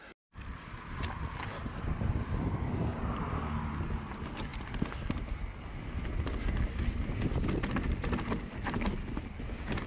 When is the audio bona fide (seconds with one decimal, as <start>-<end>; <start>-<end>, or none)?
0.0-9.9